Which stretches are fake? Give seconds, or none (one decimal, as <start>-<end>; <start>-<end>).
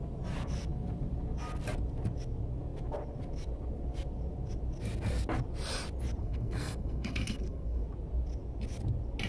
6.2-7.8